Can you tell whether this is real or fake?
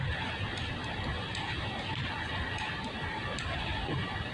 real